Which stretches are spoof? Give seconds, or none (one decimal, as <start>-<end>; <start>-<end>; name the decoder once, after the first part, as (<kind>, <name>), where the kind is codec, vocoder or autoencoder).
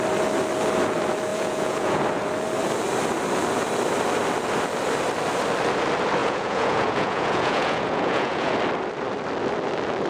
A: 1.3-2.0 (vocoder, Vocos); 6.2-8.5